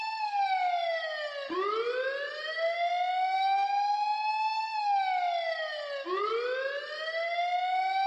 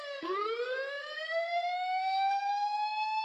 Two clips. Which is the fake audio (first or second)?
second